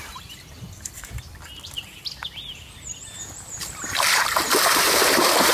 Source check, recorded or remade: remade